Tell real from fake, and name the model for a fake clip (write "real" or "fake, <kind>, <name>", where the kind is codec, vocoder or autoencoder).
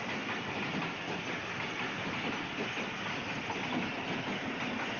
real